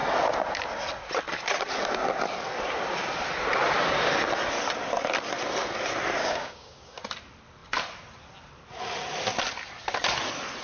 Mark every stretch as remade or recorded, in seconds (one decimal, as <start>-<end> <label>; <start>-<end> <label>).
0.0-6.2 recorded; 6.2-7.0 remade; 7.0-10.6 recorded